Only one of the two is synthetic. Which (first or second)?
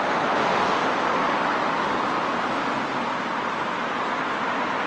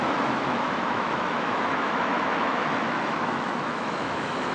second